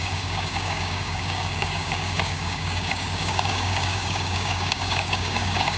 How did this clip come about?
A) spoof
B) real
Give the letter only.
A